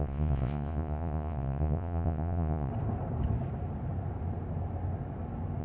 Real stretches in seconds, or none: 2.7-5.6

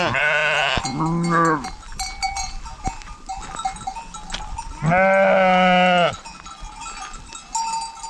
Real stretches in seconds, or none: 0.0-8.1

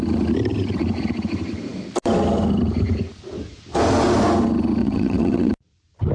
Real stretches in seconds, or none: 0.0-4.8; 5.5-6.1

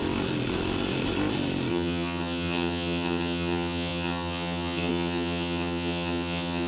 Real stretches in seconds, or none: 0.0-1.7

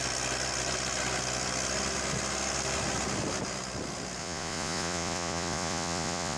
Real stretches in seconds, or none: 0.0-4.2

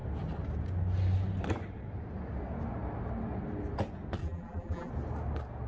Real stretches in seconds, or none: 0.0-4.2; 4.9-5.7

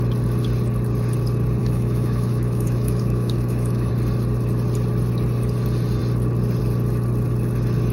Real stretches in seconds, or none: 0.0-1.6; 3.9-7.9

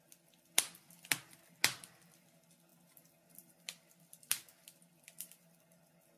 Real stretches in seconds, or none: 0.0-6.2